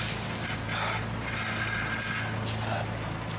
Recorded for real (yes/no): yes